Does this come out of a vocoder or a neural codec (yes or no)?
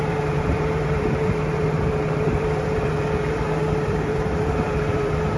yes